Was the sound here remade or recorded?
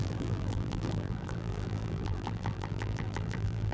remade